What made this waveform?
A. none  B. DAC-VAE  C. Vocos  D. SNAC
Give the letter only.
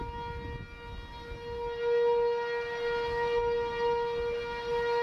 A